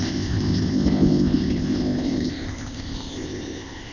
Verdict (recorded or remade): remade